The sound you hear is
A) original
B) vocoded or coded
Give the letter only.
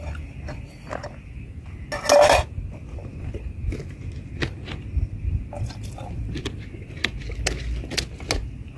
A